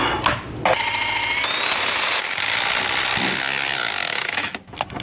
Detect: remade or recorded recorded